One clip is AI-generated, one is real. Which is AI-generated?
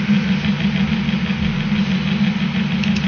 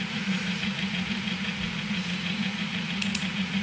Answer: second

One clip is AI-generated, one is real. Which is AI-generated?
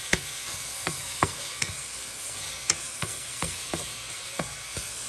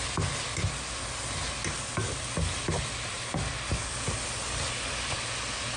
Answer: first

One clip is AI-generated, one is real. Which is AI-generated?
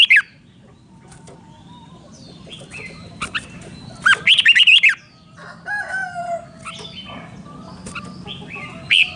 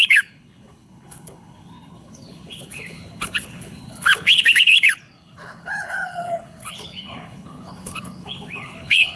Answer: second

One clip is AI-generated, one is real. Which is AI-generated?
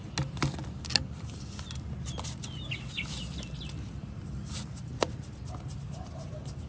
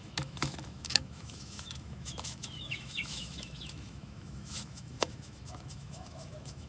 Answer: second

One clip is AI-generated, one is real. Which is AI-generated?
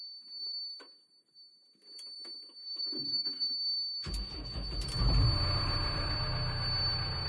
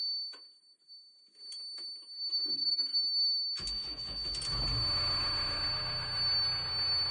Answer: first